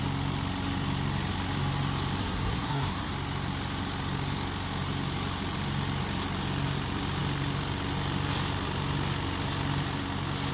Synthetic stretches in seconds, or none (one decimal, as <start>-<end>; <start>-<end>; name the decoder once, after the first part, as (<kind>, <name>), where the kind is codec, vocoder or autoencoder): 2.2-3.1 (codec, SNAC)